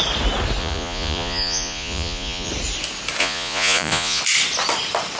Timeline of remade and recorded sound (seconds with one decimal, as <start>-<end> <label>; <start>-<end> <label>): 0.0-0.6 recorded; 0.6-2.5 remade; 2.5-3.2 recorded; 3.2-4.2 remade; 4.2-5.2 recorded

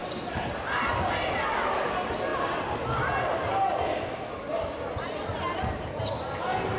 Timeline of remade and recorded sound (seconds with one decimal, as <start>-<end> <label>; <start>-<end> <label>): 0.0-6.8 recorded

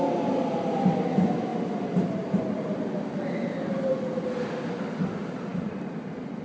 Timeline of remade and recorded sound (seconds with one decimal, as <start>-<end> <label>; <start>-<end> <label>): 0.0-1.5 recorded; 1.5-3.9 remade; 3.9-5.5 recorded; 5.5-6.4 remade

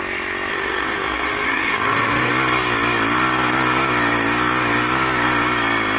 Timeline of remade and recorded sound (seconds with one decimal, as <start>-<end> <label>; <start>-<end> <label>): 0.0-0.5 recorded; 0.5-2.3 remade; 2.3-6.0 recorded

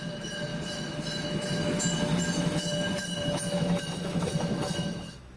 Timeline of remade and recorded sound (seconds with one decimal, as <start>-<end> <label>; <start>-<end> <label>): 0.0-5.4 remade

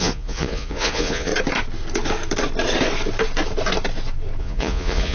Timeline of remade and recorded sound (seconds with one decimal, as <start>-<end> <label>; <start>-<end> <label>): 0.0-1.3 remade; 1.3-4.4 recorded; 4.4-5.1 remade

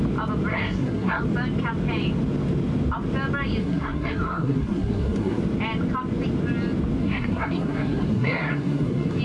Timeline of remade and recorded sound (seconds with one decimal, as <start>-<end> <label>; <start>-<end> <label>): 0.0-0.5 recorded; 0.5-1.2 remade; 1.2-3.6 recorded; 3.6-5.4 remade; 5.4-7.0 recorded; 7.0-9.2 remade